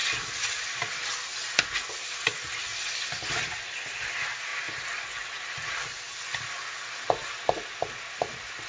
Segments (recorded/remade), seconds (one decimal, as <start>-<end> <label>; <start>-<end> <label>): 0.0-8.7 recorded